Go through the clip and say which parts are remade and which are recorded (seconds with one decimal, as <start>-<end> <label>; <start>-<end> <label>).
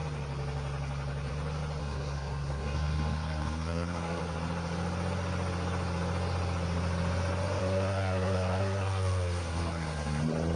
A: 0.0-1.8 recorded; 1.8-4.2 remade; 4.2-7.6 recorded; 7.6-10.2 remade; 10.2-10.6 recorded